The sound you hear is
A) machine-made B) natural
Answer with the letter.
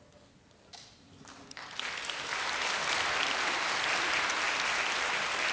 B